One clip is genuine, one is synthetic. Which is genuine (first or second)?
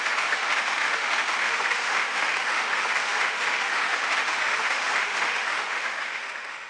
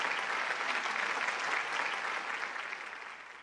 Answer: second